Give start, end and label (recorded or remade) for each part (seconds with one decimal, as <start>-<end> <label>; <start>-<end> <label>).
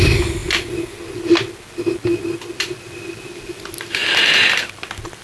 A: 0.0-5.2 recorded